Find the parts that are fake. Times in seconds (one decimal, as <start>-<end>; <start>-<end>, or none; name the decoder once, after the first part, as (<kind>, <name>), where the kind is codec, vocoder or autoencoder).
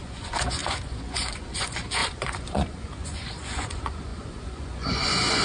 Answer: 0.0-5.4 (vocoder, Vocos)